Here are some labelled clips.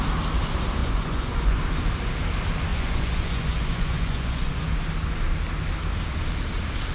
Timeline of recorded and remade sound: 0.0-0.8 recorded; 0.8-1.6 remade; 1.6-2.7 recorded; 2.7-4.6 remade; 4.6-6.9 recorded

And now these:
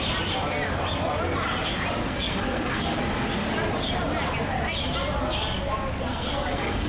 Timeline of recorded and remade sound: 0.0-2.0 recorded; 2.0-3.0 remade; 3.0-6.1 recorded; 6.1-6.9 remade

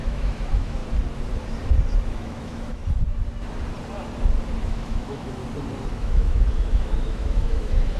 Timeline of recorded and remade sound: 0.0-0.8 remade; 0.8-2.1 recorded; 2.1-2.8 remade; 2.8-4.6 recorded; 4.6-5.4 remade; 5.4-5.9 recorded; 5.9-8.0 remade

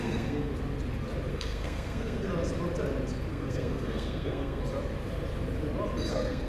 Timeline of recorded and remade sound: 0.0-0.5 remade; 0.5-1.3 recorded; 1.3-2.3 remade; 2.3-3.3 recorded; 3.3-4.6 remade; 4.6-6.1 recorded; 6.1-6.5 remade